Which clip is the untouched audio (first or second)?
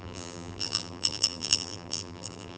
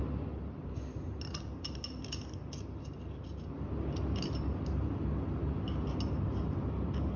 second